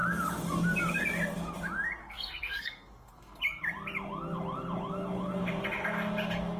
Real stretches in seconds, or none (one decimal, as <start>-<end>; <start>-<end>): 0.0-2.0; 3.4-6.6